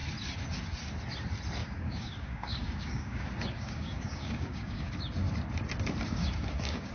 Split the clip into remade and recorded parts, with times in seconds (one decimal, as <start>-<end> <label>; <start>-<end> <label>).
0.0-1.6 recorded; 1.6-4.9 remade; 4.9-6.0 recorded; 6.0-6.9 remade